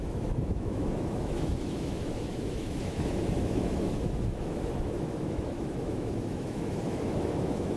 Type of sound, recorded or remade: remade